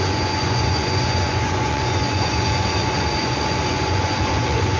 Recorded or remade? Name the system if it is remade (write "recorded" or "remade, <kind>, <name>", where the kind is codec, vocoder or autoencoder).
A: remade, vocoder, Vocos